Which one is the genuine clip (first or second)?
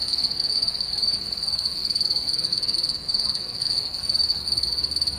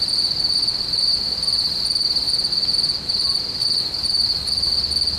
second